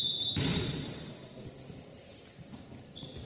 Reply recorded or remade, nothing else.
recorded